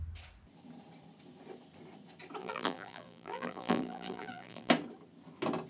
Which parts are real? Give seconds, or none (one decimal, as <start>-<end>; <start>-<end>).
0.0-2.4; 4.7-5.7